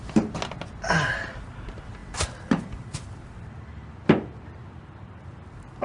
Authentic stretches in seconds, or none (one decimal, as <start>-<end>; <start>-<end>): 0.0-5.8